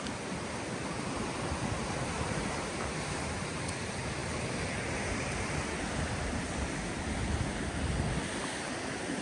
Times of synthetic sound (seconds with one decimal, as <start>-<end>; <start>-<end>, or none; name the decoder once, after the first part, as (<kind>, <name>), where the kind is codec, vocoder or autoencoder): none